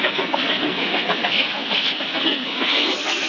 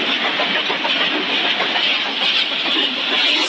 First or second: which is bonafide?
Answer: second